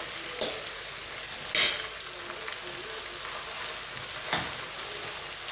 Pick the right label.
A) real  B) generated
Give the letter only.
A